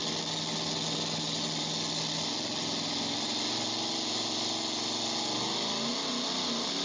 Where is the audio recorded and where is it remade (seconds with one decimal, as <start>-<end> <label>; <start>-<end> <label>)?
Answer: 0.0-6.8 recorded